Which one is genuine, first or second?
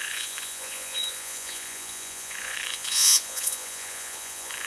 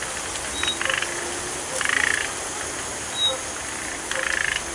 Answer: second